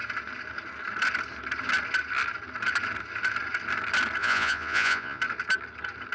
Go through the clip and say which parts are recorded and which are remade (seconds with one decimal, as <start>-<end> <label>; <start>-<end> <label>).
0.0-4.2 recorded; 4.2-5.2 remade; 5.2-6.1 recorded